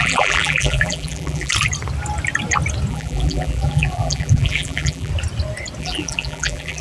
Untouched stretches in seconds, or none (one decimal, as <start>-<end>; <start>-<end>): 1.5-2.9; 5.1-5.8